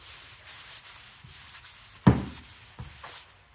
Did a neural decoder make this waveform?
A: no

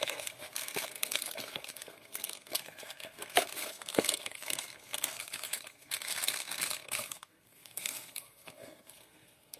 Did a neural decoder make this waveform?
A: yes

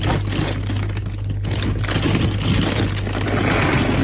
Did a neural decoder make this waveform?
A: no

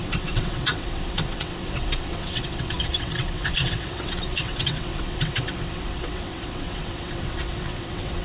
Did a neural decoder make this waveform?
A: yes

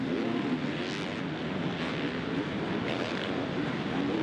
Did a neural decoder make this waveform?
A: no